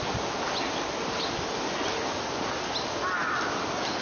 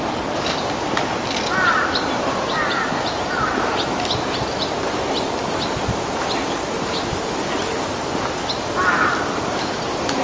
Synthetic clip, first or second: second